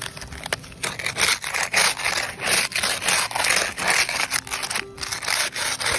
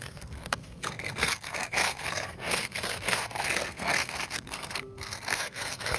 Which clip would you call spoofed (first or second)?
second